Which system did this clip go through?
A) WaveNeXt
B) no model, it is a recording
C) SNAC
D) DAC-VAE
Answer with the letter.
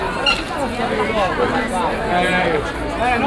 B